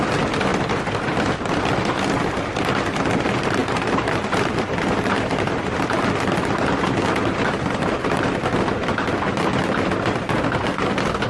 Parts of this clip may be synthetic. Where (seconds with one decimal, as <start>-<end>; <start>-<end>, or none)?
none